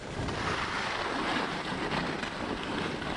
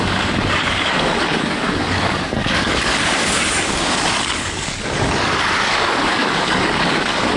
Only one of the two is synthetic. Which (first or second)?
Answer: second